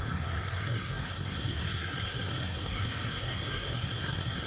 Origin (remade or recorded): remade